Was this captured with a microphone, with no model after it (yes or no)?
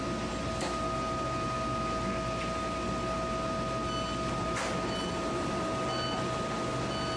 yes